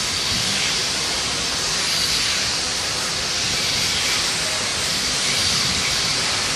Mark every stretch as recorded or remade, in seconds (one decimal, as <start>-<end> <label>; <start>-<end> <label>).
0.0-4.7 recorded; 4.7-6.6 remade